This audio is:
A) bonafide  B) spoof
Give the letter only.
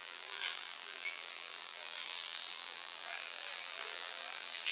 B